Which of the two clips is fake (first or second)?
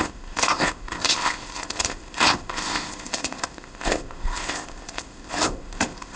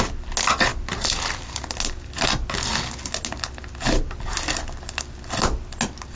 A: first